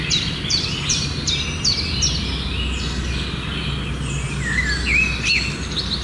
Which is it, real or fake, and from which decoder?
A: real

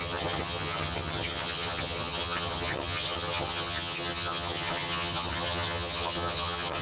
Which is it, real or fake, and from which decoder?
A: fake, vocoder, HiFi-GAN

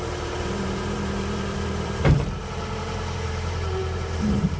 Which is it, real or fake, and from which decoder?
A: fake, vocoder, BigVGAN v2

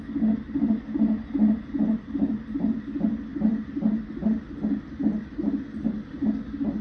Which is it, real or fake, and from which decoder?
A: real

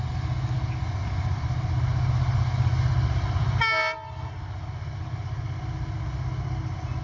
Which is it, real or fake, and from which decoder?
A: real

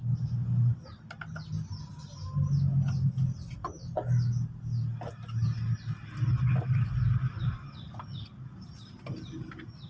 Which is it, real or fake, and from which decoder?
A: real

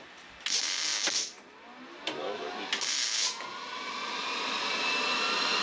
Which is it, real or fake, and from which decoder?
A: real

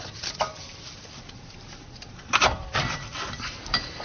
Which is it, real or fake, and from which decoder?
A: fake, vocoder, BigVGAN v2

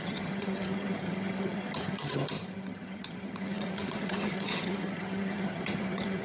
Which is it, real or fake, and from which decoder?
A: fake, vocoder, HiFi-GAN